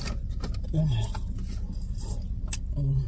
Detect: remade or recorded recorded